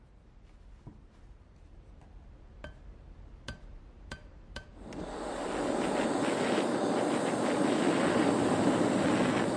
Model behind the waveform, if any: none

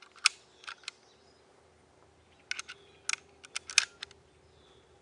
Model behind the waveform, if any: none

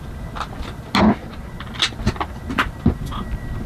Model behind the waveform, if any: none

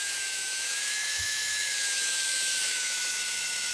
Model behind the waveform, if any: autoencoder, DAC-VAE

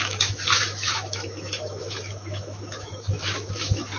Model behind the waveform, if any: autoencoder, DAC-VAE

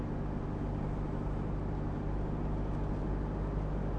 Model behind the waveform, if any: none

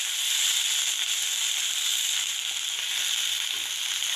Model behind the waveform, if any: none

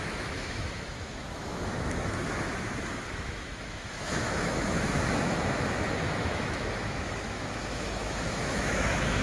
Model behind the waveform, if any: autoencoder, DAC-VAE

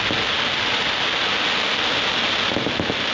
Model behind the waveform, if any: none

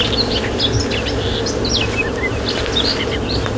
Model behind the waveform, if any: none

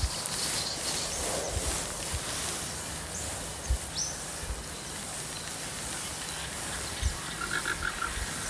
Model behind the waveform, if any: none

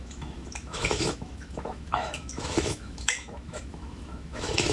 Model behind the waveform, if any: autoencoder, DAC-VAE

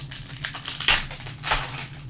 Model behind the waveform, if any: none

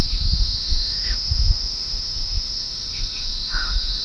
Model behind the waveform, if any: autoencoder, DAC-VAE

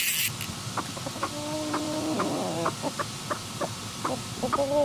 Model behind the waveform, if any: none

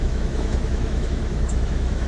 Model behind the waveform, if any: autoencoder, DAC-VAE